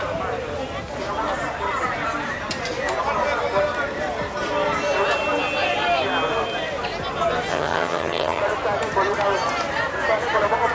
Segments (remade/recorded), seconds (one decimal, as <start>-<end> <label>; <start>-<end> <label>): 0.0-7.5 recorded; 7.5-8.4 remade; 8.4-10.7 recorded